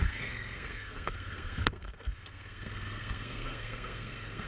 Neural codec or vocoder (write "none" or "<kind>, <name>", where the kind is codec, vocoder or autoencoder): codec, SNAC